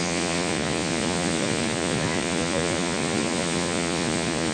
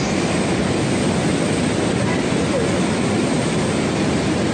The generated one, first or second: first